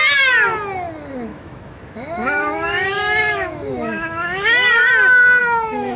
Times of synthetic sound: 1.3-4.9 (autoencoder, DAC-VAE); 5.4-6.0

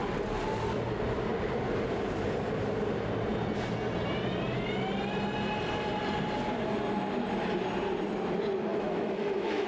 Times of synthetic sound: 8.7-9.7 (autoencoder, DAC-VAE)